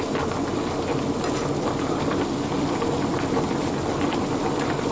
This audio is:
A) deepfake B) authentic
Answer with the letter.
A